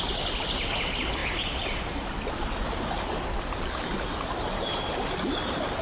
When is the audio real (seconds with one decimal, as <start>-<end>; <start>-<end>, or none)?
0.0-5.8